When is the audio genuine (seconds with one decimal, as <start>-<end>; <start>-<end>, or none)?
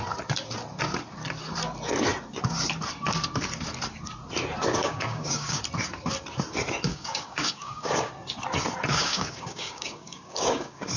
0.0-4.8; 5.6-6.9; 8.1-8.9